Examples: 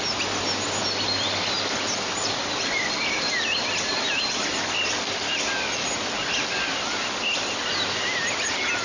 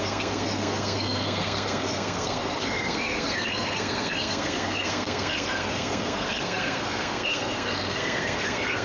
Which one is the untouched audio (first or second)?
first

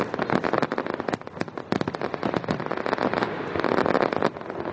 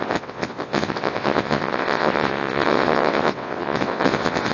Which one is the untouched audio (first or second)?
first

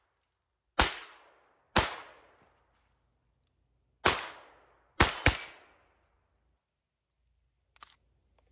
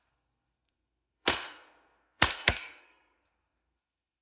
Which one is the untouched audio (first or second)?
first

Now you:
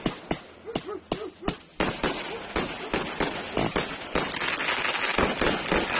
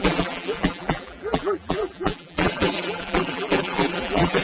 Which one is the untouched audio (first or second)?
first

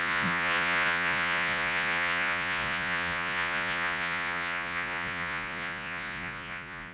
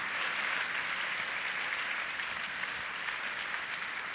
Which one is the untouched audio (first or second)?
second